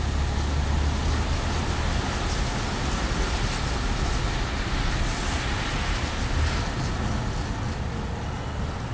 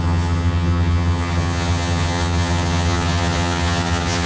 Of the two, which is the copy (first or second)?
second